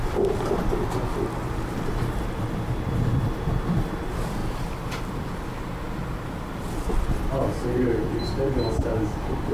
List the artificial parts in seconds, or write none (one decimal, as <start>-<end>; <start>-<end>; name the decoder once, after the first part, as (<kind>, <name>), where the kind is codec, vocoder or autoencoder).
4.4-5.0 (vocoder, BigVGAN v2); 6.0-7.6